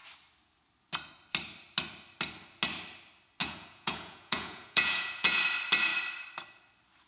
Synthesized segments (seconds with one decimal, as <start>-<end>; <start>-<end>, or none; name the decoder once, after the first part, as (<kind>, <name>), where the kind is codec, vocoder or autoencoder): 3.4-5.4 (vocoder, Vocos)